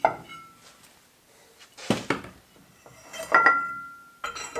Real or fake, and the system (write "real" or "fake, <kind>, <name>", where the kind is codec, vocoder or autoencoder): real